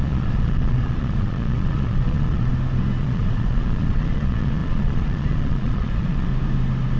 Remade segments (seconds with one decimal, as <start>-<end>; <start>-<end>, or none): 0.0-2.5; 3.0-6.3